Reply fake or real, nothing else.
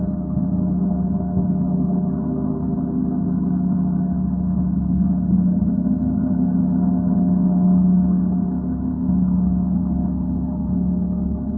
fake